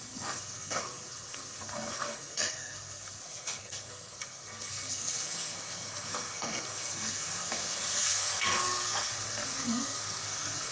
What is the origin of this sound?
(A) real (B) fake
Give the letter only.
B